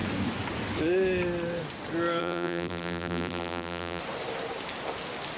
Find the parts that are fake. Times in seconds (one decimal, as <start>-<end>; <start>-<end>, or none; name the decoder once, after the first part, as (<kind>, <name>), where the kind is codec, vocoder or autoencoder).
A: 2.2-4.0 (vocoder, BigVGAN v2)